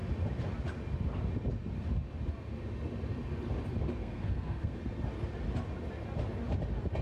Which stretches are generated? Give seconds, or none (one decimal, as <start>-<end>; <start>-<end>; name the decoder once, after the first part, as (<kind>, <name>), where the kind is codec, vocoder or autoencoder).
4.0-4.8 (codec, SNAC)